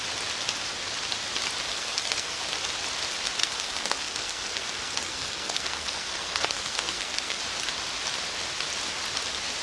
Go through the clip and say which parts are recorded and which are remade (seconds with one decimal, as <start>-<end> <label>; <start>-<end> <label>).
0.0-1.7 recorded; 1.7-2.4 remade; 2.4-3.4 recorded; 3.4-7.4 remade; 7.4-9.6 recorded